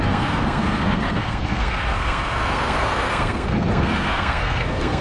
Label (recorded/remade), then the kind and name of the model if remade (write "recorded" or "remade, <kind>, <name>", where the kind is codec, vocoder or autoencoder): remade, codec, SNAC